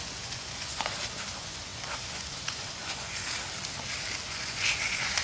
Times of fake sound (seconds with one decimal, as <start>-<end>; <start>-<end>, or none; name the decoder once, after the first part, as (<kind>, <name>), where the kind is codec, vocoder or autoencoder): 0.0-3.2 (vocoder, Vocos); 4.2-5.2